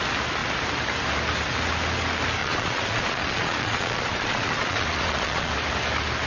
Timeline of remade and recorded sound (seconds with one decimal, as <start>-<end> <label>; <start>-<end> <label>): 0.0-2.4 recorded; 2.4-5.5 remade; 5.5-6.3 recorded